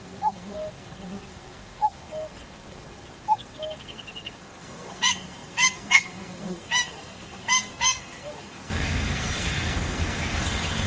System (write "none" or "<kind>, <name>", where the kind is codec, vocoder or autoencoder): codec, SNAC